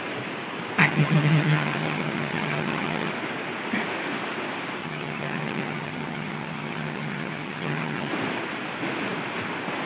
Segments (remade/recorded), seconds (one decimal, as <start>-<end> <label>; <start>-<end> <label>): 0.0-0.8 recorded; 0.8-3.1 remade; 3.1-4.8 recorded; 4.8-8.1 remade; 8.1-9.8 recorded